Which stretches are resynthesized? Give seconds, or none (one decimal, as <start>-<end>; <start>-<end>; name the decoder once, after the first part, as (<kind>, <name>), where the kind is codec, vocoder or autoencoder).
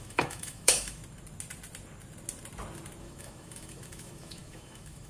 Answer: 0.0-1.0 (autoencoder, DAC-VAE); 3.0-5.1